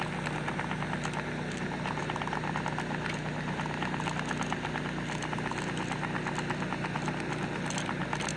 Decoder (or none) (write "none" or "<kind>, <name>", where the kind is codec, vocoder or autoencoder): none